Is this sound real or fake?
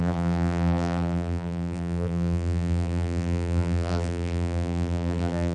fake